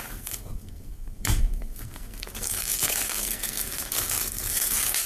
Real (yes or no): no